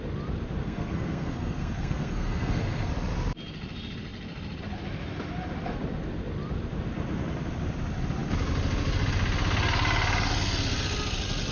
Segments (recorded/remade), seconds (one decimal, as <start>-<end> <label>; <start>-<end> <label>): 0.0-0.6 recorded; 0.6-2.9 remade; 2.9-11.5 recorded